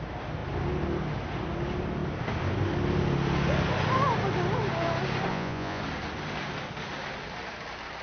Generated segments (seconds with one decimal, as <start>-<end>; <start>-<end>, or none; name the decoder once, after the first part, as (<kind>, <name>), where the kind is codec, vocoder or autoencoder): 5.3-5.8 (vocoder, Vocos)